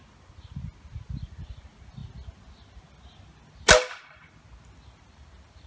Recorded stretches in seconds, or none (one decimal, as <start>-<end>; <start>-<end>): 0.0-5.7